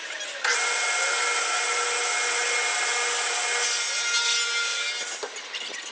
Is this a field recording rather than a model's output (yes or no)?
yes